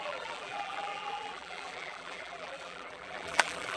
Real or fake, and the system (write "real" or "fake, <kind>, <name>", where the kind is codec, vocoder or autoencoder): fake, vocoder, BigVGAN v2